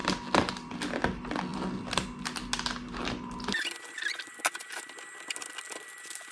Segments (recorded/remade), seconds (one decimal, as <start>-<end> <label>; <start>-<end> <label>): 0.0-6.3 recorded